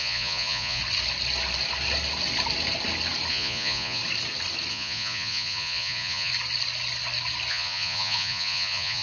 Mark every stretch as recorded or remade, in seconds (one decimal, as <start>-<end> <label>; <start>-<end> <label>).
0.0-0.8 remade; 0.8-3.3 recorded; 3.3-4.0 remade; 4.0-4.7 recorded; 4.7-6.3 remade; 6.3-7.5 recorded; 7.5-9.0 remade